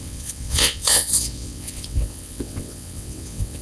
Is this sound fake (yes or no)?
yes